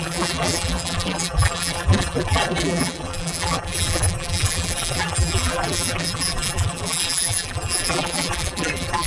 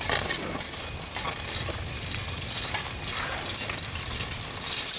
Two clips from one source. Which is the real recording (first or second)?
second